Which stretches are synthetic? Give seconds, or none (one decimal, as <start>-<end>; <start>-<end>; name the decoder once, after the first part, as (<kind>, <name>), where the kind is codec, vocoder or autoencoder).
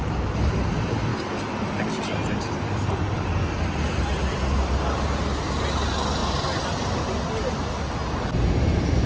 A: 1.1-5.0 (vocoder, BigVGAN v2); 6.2-7.0